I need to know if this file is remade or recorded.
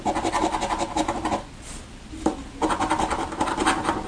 recorded